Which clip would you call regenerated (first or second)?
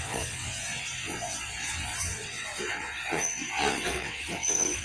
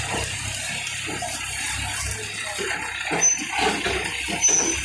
first